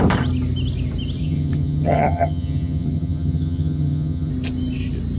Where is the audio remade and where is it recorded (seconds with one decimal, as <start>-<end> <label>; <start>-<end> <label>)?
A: 0.0-1.2 recorded; 1.2-4.3 remade; 4.3-5.2 recorded